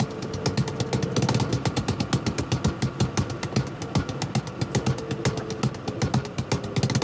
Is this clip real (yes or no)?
yes